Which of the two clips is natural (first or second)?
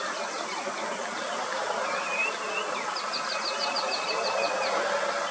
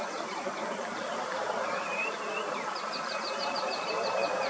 first